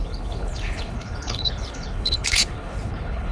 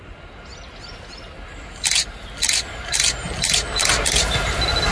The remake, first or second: first